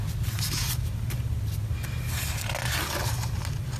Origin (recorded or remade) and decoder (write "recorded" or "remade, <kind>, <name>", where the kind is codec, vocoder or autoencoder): recorded